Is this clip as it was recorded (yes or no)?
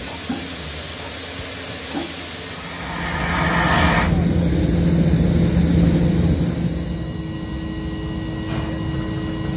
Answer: yes